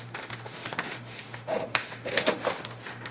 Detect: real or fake fake